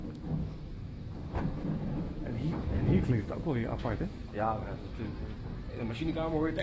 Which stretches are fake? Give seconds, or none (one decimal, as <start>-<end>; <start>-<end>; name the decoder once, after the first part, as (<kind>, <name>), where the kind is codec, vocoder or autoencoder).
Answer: 0.0-5.1 (autoencoder, DAC-VAE); 5.7-6.6